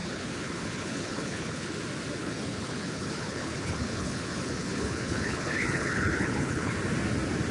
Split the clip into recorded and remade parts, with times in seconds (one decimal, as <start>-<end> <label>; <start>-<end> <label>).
0.0-1.8 remade; 1.8-2.2 recorded; 2.2-6.7 remade; 6.7-7.5 recorded